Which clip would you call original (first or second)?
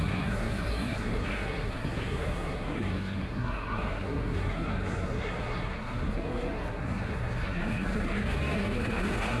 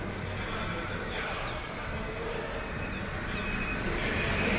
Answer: second